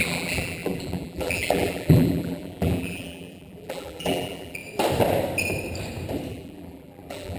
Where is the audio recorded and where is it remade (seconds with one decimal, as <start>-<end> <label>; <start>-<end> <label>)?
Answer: 0.0-4.6 remade; 4.6-6.3 recorded; 6.3-7.4 remade